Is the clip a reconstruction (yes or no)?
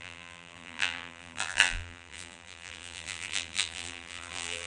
yes